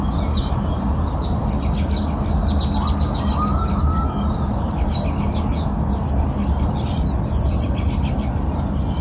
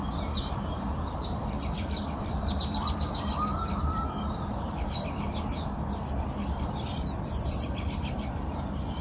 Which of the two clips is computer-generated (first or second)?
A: second